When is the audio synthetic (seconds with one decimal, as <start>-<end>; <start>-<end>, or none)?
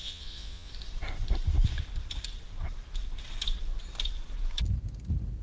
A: 0.0-0.7